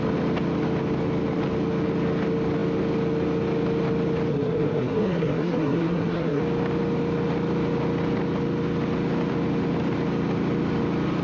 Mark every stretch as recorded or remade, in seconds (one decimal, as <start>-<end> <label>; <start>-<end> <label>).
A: 0.0-4.3 recorded; 4.3-6.4 remade; 6.4-11.2 recorded